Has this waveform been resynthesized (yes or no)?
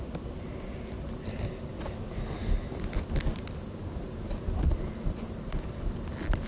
no